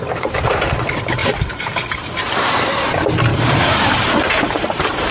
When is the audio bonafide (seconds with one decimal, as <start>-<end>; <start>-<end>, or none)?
0.0-1.2; 2.5-3.3